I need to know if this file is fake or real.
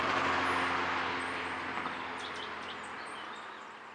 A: real